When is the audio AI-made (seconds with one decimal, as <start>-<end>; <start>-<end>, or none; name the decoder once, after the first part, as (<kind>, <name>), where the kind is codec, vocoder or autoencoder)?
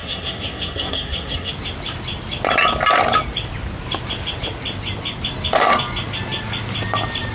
0.0-1.5 (codec, SNAC)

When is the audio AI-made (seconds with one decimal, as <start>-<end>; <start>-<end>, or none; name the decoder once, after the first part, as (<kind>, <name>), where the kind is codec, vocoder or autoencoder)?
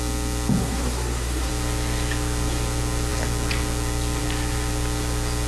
0.6-1.5 (codec, SNAC)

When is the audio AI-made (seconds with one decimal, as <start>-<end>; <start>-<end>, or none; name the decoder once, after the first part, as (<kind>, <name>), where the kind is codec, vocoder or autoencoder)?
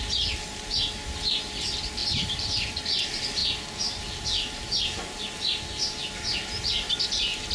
2.0-3.0 (vocoder, BigVGAN v2)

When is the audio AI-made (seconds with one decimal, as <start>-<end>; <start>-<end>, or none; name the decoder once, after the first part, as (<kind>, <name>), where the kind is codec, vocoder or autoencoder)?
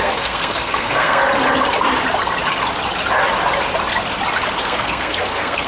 0.0-1.2 (codec, SNAC); 4.6-5.7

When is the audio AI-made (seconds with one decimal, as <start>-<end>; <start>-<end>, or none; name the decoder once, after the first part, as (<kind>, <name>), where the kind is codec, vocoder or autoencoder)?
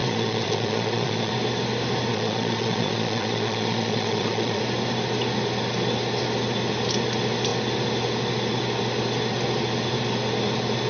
0.0-1.3 (vocoder, Vocos); 2.1-4.6